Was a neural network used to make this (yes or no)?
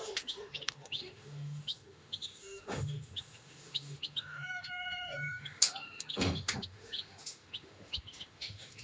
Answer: yes